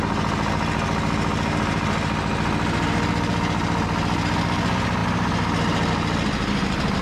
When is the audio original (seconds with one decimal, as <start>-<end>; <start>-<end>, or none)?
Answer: 0.0-7.0